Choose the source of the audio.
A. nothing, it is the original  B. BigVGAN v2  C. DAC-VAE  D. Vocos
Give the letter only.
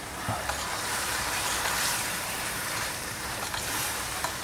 B